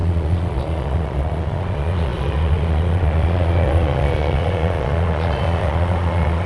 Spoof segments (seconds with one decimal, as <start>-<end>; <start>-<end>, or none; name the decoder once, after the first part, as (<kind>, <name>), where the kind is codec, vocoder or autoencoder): 0.0-6.5 (vocoder, Vocos)